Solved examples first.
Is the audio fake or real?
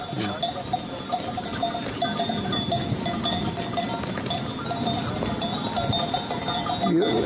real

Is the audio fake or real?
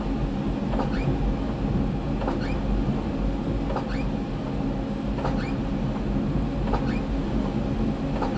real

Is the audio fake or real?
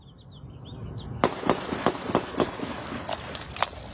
real